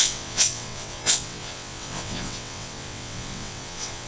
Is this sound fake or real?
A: fake